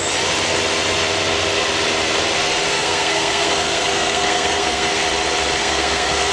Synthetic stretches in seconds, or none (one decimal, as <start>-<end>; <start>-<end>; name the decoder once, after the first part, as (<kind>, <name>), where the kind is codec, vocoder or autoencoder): 2.7-5.0 (codec, SNAC); 5.6-6.3